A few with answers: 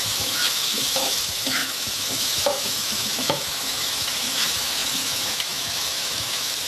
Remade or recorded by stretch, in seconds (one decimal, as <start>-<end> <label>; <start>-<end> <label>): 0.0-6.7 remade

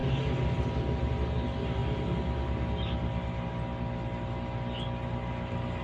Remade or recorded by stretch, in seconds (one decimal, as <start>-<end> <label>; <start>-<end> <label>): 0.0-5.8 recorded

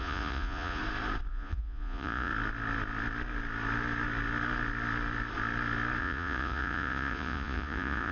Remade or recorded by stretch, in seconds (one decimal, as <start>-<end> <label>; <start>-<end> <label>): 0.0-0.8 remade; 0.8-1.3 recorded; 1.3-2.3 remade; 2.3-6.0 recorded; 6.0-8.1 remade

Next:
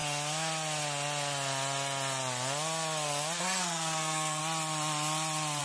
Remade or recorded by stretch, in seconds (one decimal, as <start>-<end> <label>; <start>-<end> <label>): 0.0-3.4 recorded; 3.4-4.4 remade; 4.4-5.6 recorded